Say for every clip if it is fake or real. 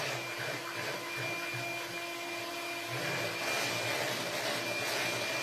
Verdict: real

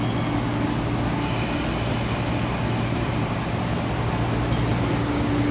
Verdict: real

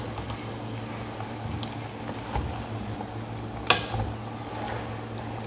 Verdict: real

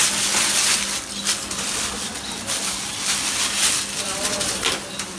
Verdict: real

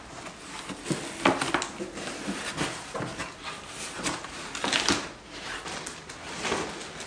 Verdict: real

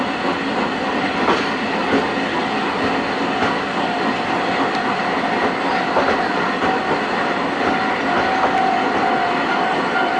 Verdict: real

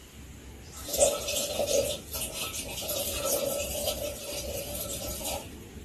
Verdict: real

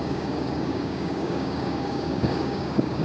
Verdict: fake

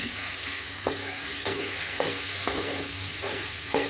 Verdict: fake